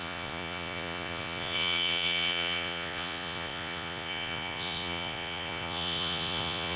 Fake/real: fake